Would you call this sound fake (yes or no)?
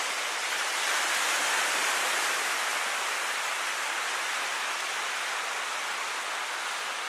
no